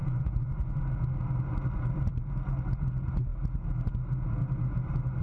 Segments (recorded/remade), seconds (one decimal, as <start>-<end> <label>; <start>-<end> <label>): 0.0-0.8 remade; 0.8-5.2 recorded